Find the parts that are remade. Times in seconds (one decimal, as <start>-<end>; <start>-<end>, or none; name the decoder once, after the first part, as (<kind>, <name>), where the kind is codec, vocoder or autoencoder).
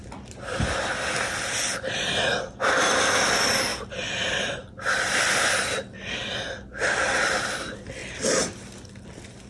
1.5-8.0 (vocoder, BigVGAN v2)